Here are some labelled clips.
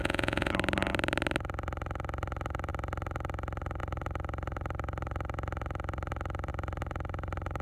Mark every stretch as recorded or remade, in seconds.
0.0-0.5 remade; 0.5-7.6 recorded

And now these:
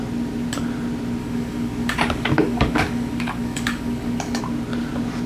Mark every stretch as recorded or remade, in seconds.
0.0-1.2 recorded; 1.2-4.4 remade; 4.4-5.3 recorded

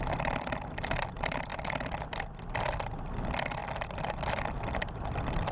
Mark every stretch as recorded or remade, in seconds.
0.0-5.5 remade

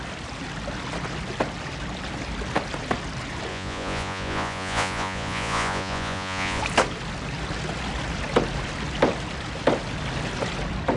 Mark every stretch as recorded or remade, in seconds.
0.0-3.5 recorded; 3.5-6.6 remade; 6.6-11.0 recorded

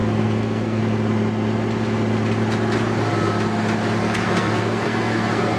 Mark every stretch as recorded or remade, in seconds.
0.0-0.8 remade; 0.8-4.0 recorded; 4.0-5.6 remade